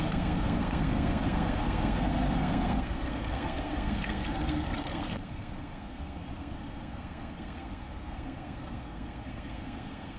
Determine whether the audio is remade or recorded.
remade